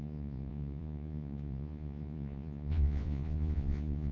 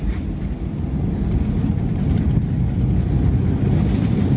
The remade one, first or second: first